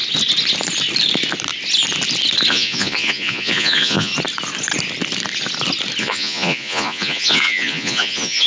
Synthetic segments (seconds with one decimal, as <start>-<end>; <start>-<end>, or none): 2.5-4.1; 6.0-8.5